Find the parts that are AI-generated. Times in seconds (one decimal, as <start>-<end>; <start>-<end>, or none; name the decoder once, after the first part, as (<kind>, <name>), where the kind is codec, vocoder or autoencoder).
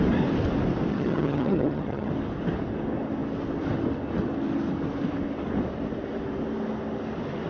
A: 0.9-2.1 (vocoder, HiFi-GAN)